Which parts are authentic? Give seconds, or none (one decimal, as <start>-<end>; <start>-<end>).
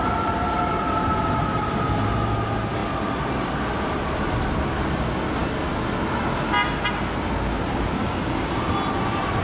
0.0-8.0; 8.5-9.4